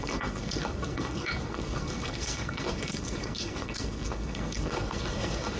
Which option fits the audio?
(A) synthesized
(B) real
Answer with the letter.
A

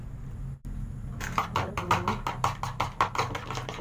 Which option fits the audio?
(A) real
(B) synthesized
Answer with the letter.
A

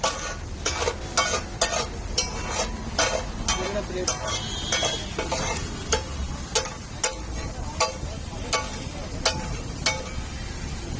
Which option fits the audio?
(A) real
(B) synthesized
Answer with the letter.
A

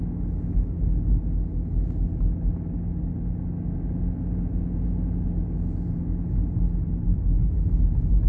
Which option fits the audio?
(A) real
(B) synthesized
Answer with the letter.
A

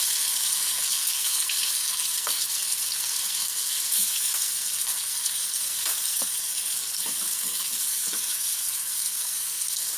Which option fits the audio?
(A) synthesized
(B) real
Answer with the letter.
A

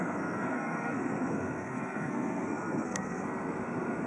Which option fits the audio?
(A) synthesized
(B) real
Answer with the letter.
A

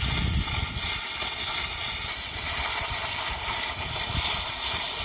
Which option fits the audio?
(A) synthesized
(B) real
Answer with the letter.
B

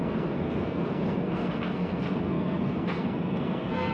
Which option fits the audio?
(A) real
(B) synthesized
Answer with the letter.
B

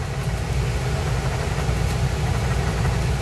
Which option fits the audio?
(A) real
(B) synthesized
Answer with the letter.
A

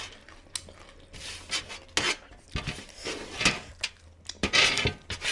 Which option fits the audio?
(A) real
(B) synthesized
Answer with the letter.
A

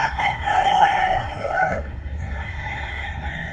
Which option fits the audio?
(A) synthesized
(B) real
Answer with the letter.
A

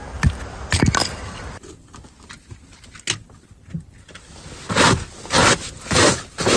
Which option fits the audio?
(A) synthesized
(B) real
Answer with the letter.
B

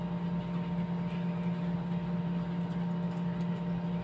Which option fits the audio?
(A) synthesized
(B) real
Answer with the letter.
B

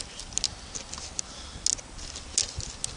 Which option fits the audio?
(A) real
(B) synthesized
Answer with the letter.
A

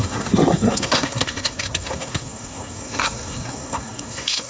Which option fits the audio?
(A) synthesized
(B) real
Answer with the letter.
A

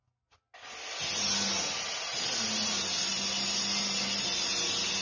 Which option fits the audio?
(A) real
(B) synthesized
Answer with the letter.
A